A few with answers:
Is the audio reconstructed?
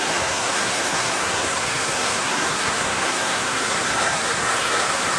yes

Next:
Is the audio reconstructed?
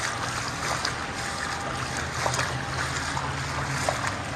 no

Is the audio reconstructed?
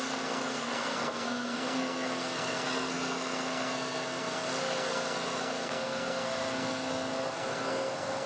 yes